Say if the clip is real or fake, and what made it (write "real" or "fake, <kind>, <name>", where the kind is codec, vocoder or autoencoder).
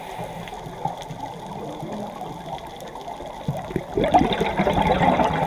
real